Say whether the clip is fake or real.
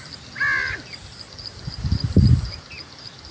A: real